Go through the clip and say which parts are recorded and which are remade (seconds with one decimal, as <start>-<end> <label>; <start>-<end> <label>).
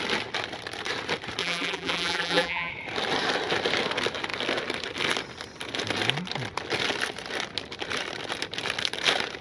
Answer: 0.0-1.4 recorded; 1.4-2.7 remade; 2.7-9.4 recorded